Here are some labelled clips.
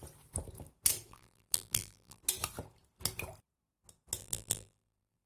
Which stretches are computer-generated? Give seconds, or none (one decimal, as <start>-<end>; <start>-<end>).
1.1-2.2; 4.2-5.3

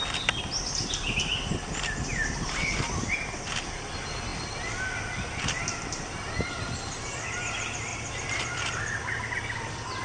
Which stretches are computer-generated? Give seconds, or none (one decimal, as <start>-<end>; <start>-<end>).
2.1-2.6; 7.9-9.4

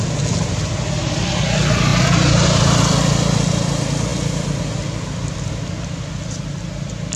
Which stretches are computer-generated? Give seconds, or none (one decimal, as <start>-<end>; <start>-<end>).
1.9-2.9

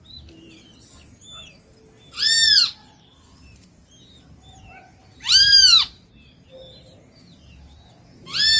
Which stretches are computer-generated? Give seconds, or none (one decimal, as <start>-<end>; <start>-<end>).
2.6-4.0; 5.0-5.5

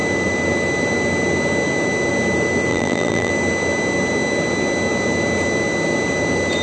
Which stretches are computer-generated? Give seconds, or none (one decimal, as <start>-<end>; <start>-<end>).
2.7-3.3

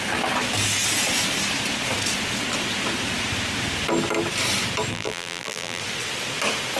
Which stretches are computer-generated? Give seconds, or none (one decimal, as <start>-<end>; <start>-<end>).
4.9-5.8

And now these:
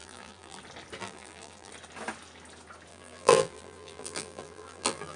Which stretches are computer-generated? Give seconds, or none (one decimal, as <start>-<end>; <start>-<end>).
0.0-0.6; 1.0-1.7; 2.9-5.2